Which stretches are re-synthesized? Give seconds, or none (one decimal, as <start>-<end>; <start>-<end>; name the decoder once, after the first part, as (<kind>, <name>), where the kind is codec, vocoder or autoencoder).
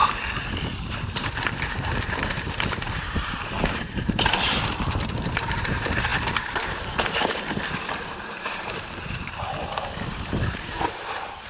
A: 0.8-11.5 (vocoder, BigVGAN v2)